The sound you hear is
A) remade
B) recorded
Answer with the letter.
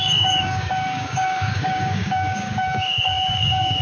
A